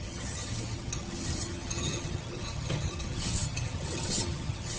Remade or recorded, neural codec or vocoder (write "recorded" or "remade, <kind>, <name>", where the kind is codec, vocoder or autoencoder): remade, vocoder, HiFi-GAN